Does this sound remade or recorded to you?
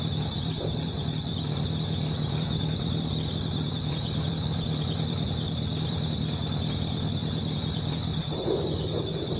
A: remade